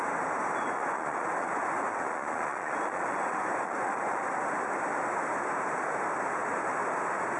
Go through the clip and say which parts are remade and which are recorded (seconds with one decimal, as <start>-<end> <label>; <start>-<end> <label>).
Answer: 0.0-0.6 recorded; 0.6-4.3 remade; 4.3-7.4 recorded